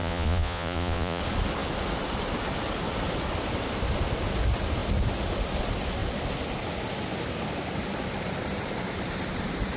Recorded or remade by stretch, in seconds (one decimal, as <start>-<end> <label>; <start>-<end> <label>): 0.0-1.2 remade; 1.2-9.8 recorded